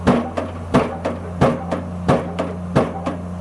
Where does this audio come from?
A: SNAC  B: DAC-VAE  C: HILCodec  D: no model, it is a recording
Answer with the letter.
D